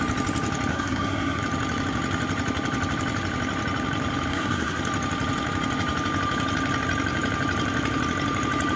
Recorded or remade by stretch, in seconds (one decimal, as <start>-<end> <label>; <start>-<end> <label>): 0.0-0.7 recorded; 0.7-1.4 remade; 1.4-4.3 recorded; 4.3-4.8 remade; 4.8-8.8 recorded